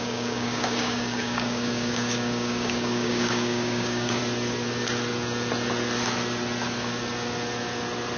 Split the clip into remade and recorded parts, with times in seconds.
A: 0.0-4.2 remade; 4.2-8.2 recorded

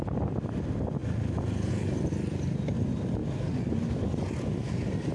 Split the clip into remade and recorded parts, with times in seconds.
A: 0.0-5.1 recorded